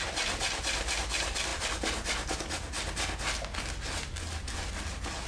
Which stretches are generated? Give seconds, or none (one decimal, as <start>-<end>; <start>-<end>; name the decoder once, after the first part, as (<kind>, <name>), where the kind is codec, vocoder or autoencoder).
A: none